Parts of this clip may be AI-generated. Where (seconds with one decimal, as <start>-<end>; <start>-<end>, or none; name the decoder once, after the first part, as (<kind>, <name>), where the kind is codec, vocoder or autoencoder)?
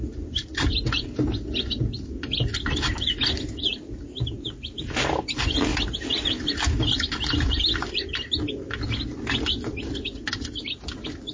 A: none